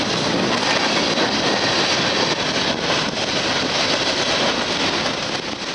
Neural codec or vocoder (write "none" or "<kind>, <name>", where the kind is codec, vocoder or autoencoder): none